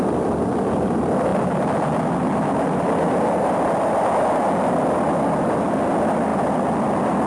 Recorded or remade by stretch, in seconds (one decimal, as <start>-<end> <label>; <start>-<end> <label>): 0.0-7.3 recorded